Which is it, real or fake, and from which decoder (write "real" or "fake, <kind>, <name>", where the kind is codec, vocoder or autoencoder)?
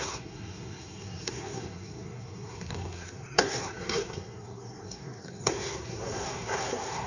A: fake, codec, SNAC